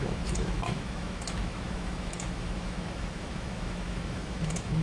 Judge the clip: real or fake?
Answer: fake